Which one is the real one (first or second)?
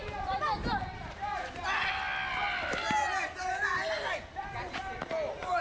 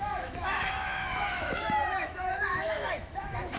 first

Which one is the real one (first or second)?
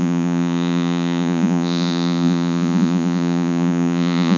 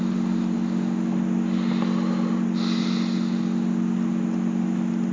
second